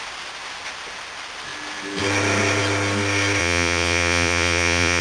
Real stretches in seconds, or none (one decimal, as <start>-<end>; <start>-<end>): 0.0-3.4